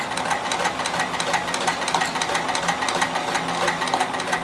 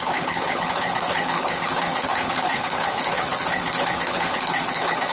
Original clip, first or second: first